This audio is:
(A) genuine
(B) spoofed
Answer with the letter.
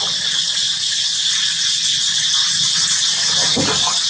A